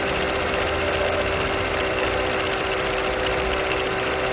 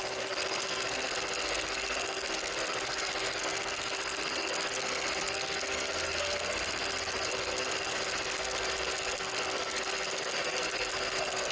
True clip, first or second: first